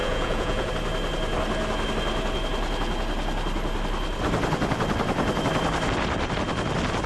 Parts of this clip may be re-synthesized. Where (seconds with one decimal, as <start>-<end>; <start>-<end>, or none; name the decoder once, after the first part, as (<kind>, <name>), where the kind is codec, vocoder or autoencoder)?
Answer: 0.0-0.7 (vocoder, Vocos)